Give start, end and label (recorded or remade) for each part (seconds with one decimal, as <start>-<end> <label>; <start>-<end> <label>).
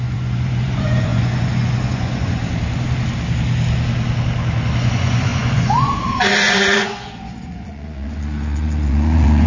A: 0.0-2.4 remade; 2.4-4.8 recorded; 4.8-9.5 remade